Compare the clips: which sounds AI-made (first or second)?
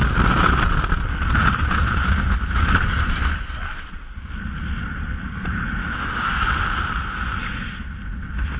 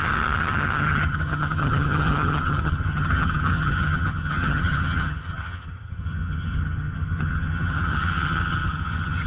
second